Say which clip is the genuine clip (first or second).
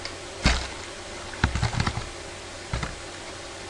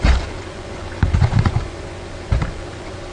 first